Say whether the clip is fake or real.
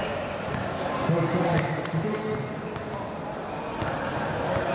real